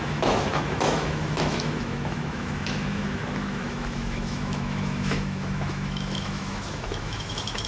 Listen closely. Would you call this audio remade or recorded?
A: remade